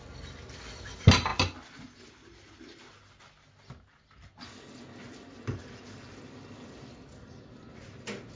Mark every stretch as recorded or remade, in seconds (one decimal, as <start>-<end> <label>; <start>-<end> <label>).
0.0-8.4 recorded